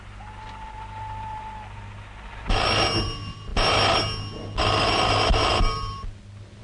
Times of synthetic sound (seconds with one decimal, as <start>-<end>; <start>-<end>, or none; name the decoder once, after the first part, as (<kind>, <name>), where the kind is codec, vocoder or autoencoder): none